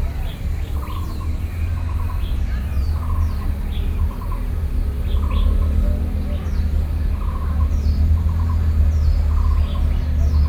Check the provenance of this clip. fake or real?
real